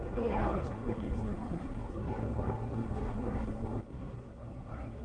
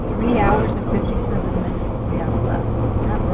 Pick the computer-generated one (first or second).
first